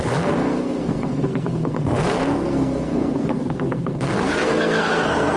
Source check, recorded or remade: remade